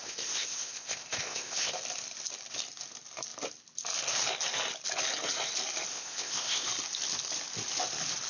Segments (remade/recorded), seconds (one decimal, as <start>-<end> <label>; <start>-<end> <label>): 0.0-1.7 remade; 1.7-5.9 recorded; 5.9-6.7 remade; 6.7-8.3 recorded